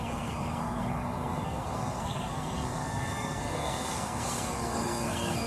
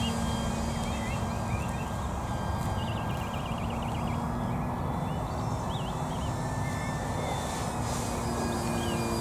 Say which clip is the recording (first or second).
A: second